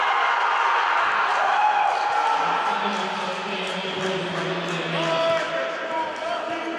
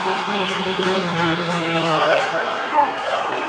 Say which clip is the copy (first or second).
second